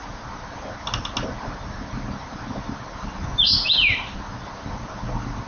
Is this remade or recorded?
recorded